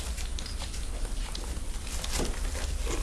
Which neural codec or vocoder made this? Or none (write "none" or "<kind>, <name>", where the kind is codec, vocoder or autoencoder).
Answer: none